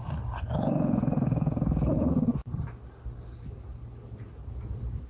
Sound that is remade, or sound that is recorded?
recorded